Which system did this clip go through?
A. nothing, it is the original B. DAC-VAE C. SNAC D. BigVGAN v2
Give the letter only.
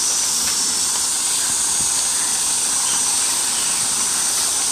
A